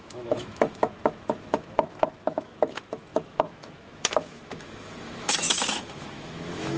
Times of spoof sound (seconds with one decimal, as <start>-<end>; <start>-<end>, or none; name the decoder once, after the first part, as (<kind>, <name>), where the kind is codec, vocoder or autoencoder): 0.0-6.8 (autoencoder, DAC-VAE)